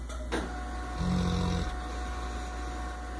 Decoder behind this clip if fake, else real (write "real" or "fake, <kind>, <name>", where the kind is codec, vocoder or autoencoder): real